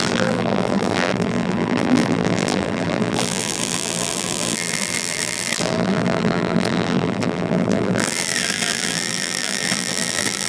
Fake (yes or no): yes